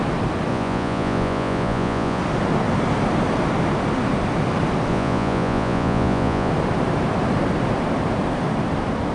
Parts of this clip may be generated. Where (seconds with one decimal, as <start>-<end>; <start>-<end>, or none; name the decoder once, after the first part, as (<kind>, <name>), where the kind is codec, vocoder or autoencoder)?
0.5-2.2 (vocoder, Vocos); 4.9-6.5